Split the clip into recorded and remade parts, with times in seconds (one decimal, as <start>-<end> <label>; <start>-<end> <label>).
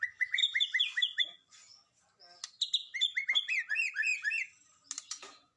0.0-0.4 remade; 0.4-1.2 recorded; 1.2-1.7 remade; 1.7-5.1 recorded; 5.1-5.6 remade